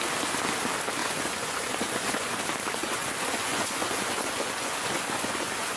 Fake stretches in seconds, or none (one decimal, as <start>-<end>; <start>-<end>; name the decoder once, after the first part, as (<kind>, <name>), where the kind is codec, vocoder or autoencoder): 1.0-2.4 (vocoder, Vocos); 2.8-5.8